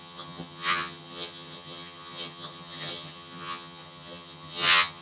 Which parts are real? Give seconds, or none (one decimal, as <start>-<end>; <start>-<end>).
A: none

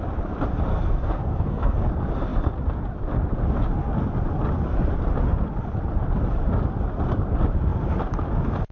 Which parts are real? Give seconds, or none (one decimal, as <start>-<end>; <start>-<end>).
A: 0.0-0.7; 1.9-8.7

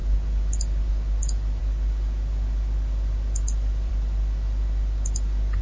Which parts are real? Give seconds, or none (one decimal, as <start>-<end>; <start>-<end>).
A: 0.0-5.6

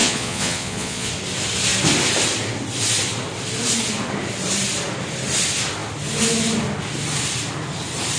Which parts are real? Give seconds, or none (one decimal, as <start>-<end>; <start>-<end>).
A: 1.1-8.2

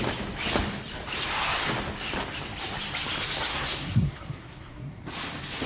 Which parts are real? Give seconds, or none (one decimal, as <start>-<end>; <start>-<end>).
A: 0.0-3.5; 5.0-5.7